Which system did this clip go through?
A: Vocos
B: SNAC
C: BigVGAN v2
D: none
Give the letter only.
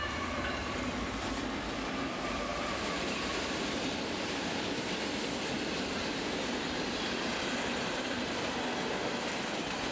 C